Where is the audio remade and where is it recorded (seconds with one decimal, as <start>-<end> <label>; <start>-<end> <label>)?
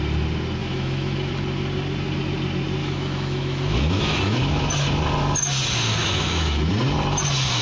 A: 0.0-0.6 recorded; 0.6-1.3 remade; 1.3-2.8 recorded; 2.8-4.7 remade; 4.7-6.0 recorded; 6.0-6.7 remade; 6.7-7.6 recorded